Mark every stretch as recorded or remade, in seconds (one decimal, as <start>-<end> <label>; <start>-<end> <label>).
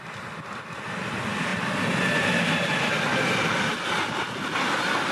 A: 0.0-5.1 recorded